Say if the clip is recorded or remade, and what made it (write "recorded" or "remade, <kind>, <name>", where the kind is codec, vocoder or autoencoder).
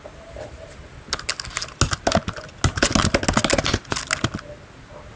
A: recorded